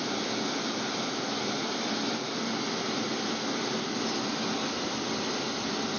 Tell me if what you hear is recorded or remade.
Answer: recorded